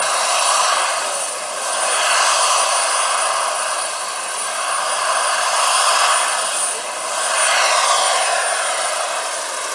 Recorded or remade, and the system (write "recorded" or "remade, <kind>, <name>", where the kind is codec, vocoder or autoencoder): recorded